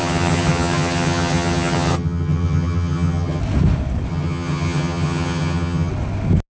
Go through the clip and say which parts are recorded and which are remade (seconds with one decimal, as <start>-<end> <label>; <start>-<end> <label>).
0.0-3.4 remade; 3.4-4.1 recorded; 4.1-5.9 remade; 5.9-6.5 recorded